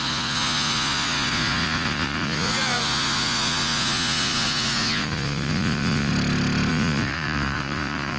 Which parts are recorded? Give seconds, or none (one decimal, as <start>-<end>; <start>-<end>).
6.1-6.7